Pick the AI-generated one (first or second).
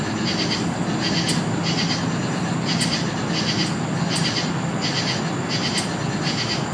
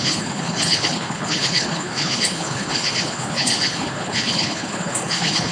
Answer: second